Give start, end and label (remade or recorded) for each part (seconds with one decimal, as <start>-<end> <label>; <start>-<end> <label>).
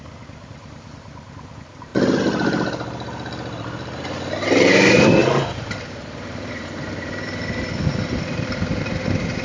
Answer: 0.0-1.9 remade; 1.9-4.7 recorded; 4.7-7.4 remade; 7.4-8.1 recorded; 8.1-9.4 remade